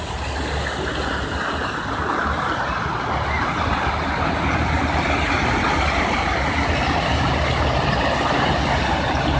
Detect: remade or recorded recorded